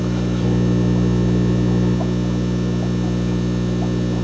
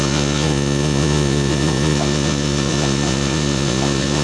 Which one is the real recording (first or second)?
first